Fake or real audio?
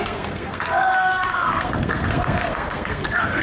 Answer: fake